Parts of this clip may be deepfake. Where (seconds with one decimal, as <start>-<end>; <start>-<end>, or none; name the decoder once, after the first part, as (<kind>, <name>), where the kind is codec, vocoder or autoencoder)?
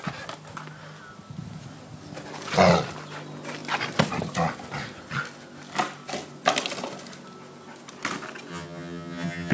8.5-9.5 (vocoder, HiFi-GAN)